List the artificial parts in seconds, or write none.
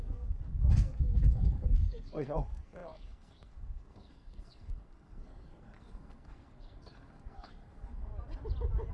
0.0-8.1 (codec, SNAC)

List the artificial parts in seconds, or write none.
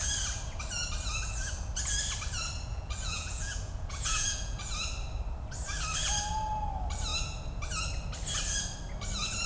2.7-4.7 (vocoder, Vocos)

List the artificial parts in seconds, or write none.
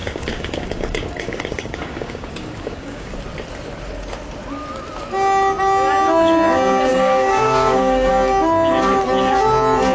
0.0-3.1 (codec, DAC); 6.9-8.1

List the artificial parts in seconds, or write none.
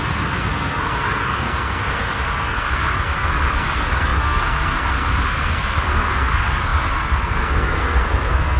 0.0-8.6 (codec, SNAC)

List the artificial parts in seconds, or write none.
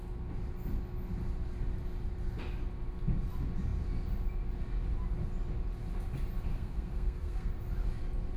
6.5-7.5 (codec, SNAC)